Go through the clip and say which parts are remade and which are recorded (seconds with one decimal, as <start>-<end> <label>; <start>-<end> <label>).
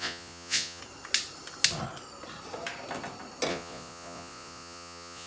0.0-0.8 remade; 0.8-3.5 recorded; 3.5-5.3 remade